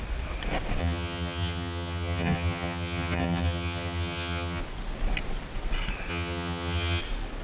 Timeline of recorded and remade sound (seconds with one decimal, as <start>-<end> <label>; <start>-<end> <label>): 0.0-0.8 recorded; 0.8-4.6 remade; 4.6-6.1 recorded; 6.1-7.0 remade; 7.0-7.4 recorded